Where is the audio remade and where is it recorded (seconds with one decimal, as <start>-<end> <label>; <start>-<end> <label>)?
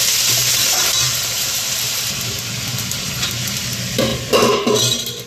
0.0-0.5 recorded; 0.5-2.4 remade; 2.4-5.3 recorded